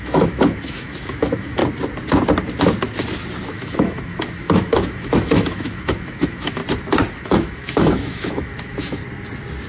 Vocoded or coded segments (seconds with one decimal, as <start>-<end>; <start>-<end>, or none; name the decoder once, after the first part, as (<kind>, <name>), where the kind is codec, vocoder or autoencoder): 0.0-1.6 (autoencoder, DAC-VAE); 3.5-6.6; 7.1-9.0